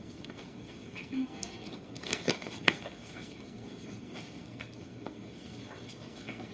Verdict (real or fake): fake